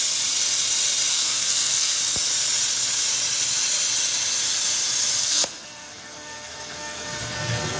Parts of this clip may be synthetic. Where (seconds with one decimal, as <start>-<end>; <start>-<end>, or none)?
1.1-2.0; 5.2-7.8